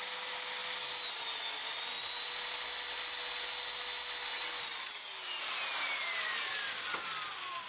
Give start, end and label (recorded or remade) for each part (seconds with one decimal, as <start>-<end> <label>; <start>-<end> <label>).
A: 0.0-7.7 recorded